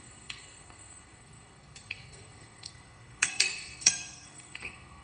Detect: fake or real fake